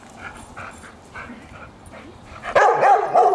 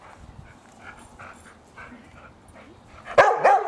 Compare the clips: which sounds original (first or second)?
second